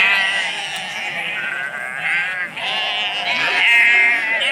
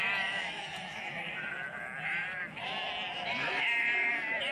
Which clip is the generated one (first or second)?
second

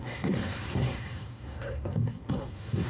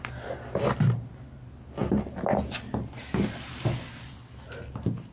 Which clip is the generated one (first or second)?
first